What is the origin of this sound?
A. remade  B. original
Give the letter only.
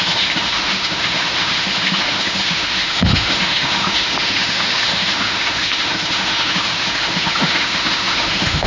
A